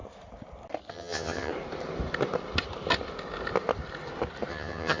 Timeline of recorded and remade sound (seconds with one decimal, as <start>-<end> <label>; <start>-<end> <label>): 0.0-0.9 recorded; 0.9-1.5 remade; 1.5-4.5 recorded; 4.5-5.0 remade